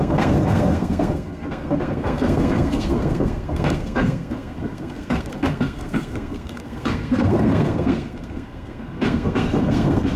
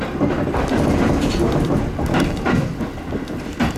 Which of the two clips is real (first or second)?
second